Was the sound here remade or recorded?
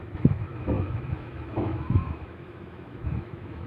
remade